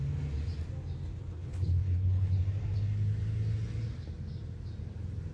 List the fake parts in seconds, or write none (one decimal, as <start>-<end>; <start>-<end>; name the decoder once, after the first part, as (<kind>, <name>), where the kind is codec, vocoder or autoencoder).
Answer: 1.2-2.4 (codec, HILCodec)